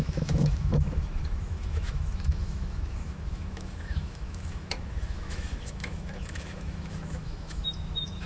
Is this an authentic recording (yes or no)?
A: no